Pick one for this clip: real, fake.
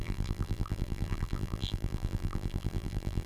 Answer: fake